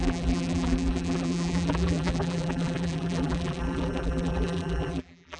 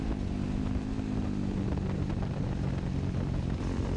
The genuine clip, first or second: second